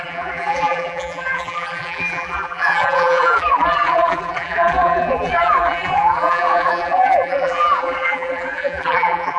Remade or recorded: remade